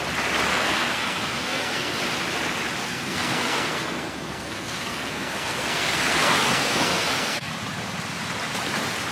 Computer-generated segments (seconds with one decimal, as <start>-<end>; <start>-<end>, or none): 0.5-2.0; 2.8-7.5

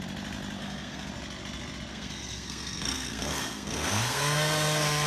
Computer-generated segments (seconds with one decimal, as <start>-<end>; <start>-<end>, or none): 0.6-1.1; 1.9-5.1